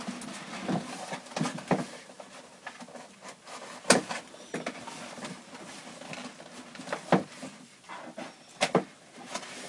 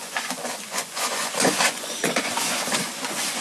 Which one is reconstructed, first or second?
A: second